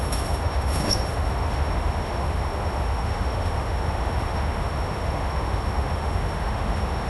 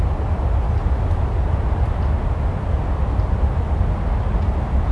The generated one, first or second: first